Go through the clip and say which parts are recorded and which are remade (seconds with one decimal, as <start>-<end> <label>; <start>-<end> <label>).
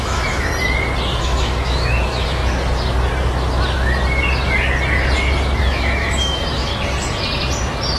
0.0-0.5 remade; 0.5-1.2 recorded; 1.2-2.4 remade; 2.4-5.6 recorded; 5.6-6.7 remade; 6.7-8.0 recorded